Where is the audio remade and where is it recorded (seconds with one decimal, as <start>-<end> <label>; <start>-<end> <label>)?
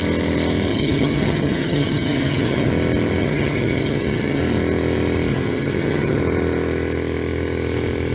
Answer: 0.0-0.7 recorded; 0.7-2.7 remade; 2.7-3.2 recorded; 3.2-4.4 remade; 4.4-5.3 recorded; 5.3-6.2 remade; 6.2-8.1 recorded